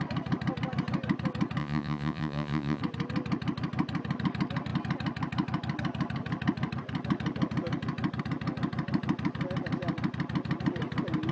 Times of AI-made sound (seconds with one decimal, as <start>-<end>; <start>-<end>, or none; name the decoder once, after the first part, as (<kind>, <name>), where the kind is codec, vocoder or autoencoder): 1.6-2.8 (vocoder, Vocos)